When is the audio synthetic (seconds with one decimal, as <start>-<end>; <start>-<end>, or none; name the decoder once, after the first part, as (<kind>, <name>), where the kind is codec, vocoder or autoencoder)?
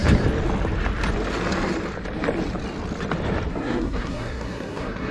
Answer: 3.5-5.1 (codec, SNAC)